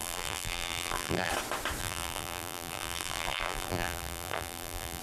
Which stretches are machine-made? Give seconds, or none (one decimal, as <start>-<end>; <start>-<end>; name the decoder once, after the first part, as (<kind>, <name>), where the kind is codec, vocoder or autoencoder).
0.0-1.3 (vocoder, BigVGAN v2); 1.8-5.0